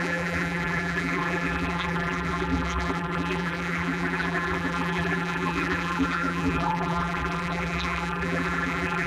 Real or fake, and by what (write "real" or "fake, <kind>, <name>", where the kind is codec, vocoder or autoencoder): fake, vocoder, BigVGAN v2